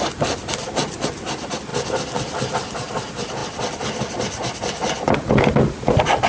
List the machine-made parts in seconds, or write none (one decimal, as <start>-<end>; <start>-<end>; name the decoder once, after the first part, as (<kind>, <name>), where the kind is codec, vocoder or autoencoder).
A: none